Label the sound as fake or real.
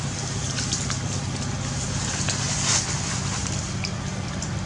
real